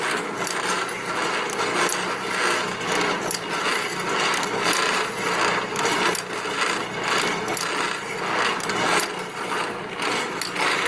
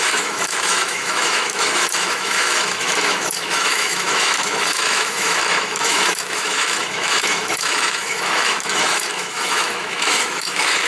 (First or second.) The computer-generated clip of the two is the second